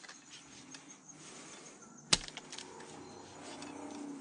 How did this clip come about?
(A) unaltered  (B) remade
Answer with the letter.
A